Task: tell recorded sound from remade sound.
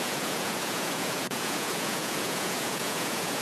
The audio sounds remade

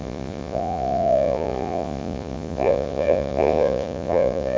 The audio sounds remade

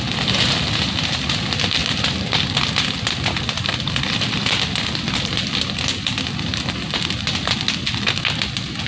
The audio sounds recorded